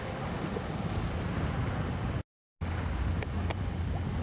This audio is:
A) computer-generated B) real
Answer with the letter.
B